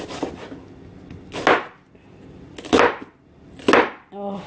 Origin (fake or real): real